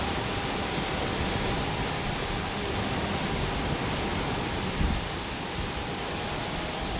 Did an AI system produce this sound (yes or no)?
no